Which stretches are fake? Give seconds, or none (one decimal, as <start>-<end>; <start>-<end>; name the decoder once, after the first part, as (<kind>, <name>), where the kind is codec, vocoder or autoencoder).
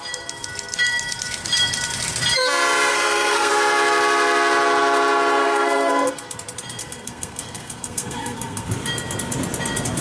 2.9-3.5 (codec, SNAC); 5.4-6.1; 6.8-8.7